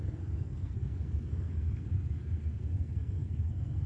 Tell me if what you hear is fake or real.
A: fake